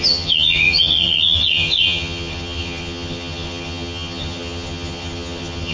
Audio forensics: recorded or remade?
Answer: remade